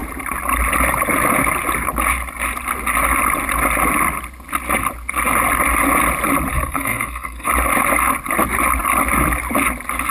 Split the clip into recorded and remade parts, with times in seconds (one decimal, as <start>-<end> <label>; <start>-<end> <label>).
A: 0.0-6.5 recorded; 6.5-7.5 remade; 7.5-10.1 recorded